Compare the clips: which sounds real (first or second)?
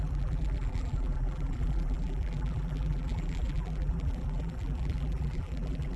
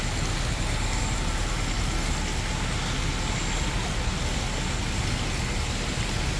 second